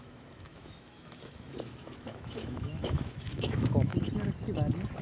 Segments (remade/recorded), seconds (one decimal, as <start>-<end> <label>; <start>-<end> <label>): 0.0-3.9 remade; 3.9-5.0 recorded